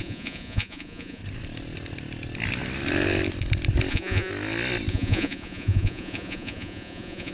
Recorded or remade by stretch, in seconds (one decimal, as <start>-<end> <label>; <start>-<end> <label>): 0.0-1.2 remade; 1.2-3.9 recorded; 3.9-4.3 remade; 4.3-4.9 recorded; 4.9-7.3 remade